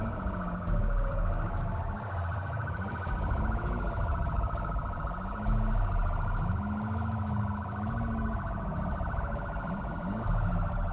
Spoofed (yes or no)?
yes